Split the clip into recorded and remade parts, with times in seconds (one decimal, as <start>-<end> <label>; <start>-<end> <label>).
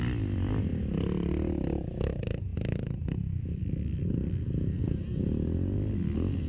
0.0-0.7 remade; 0.7-1.3 recorded; 1.3-2.5 remade; 2.5-6.5 recorded